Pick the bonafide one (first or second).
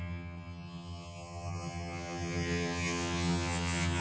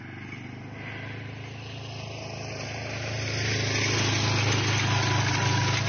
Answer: second